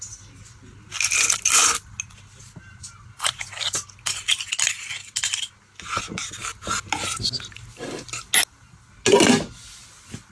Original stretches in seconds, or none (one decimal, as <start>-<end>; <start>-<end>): 0.0-10.3